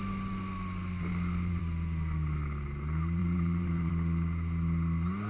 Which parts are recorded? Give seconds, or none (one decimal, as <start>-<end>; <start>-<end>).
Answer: 0.0-1.1; 1.6-3.2; 3.9-5.3